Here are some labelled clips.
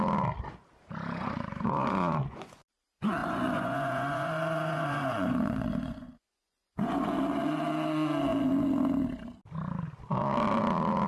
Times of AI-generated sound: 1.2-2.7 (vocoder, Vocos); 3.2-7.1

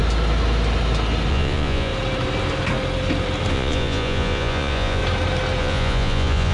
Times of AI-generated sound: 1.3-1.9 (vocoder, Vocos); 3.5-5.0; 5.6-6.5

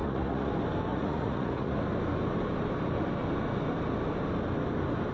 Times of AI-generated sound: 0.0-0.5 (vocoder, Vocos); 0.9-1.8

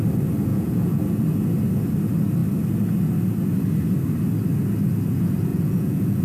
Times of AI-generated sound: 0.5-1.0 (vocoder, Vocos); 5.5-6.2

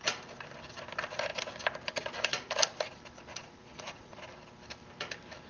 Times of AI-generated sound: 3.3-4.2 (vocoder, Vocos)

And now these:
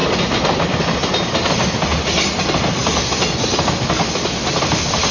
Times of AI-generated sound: none

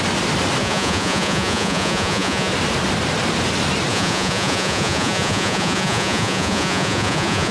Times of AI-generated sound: 0.6-2.5 (vocoder, Vocos); 3.9-7.5

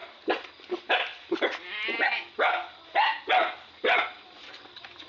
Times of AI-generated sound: none